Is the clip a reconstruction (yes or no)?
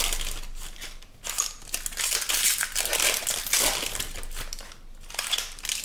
no